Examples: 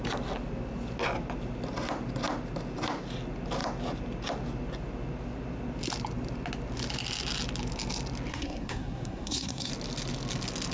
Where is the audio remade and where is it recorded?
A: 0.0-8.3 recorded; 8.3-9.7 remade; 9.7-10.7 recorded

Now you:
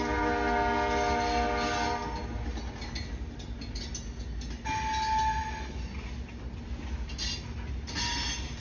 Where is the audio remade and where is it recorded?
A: 0.0-8.6 recorded

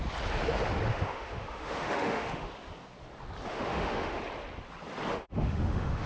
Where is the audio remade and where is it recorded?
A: 0.0-0.9 recorded; 0.9-2.5 remade; 2.5-3.5 recorded; 3.5-4.2 remade; 4.2-5.1 recorded; 5.1-6.1 remade

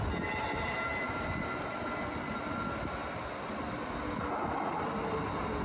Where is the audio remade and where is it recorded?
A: 0.0-5.6 recorded

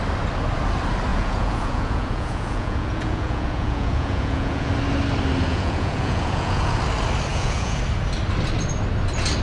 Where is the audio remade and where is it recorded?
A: 0.0-1.1 recorded; 1.1-4.7 remade; 4.7-5.5 recorded; 5.5-6.8 remade; 6.8-7.3 recorded; 7.3-7.8 remade; 7.8-9.4 recorded